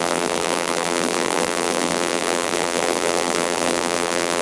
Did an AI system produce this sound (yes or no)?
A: yes